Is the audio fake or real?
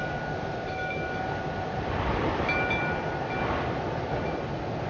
real